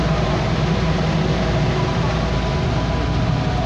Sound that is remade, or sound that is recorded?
recorded